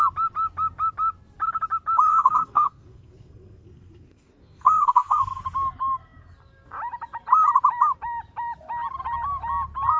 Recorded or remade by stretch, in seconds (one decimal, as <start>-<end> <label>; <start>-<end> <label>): 0.0-2.1 recorded; 2.1-5.4 remade; 5.4-10.0 recorded